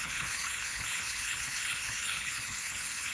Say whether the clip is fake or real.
fake